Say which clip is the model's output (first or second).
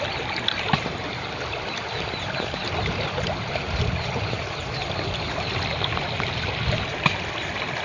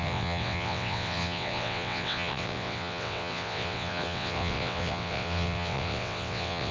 second